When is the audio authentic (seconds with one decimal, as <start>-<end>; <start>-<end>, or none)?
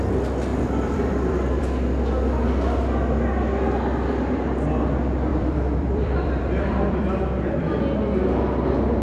0.0-0.5; 1.6-5.3; 7.8-9.0